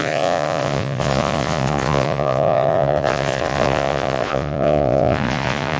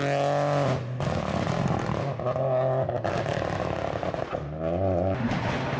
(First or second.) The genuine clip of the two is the second